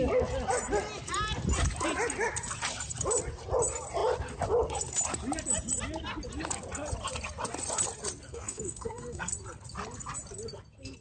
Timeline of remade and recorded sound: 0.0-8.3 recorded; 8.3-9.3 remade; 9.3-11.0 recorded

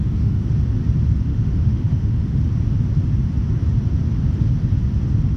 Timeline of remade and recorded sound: 0.0-0.5 remade; 0.5-1.3 recorded; 1.3-2.4 remade; 2.4-5.4 recorded

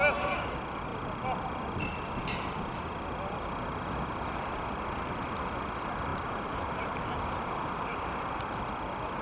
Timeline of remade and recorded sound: 0.0-6.1 recorded; 6.1-8.4 remade; 8.4-9.2 recorded

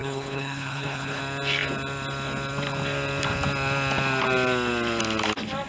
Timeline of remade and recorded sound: 0.0-1.2 remade; 1.2-5.7 recorded